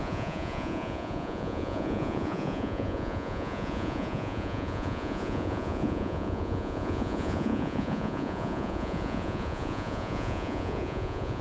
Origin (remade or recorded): remade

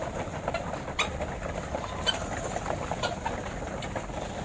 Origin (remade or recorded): recorded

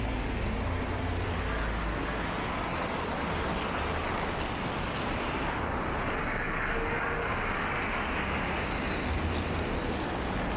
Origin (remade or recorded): recorded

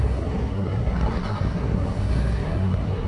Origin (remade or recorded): remade